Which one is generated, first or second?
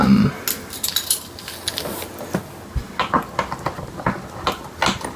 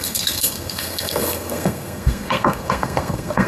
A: second